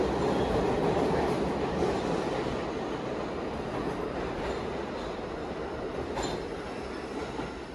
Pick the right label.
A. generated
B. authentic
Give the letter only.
B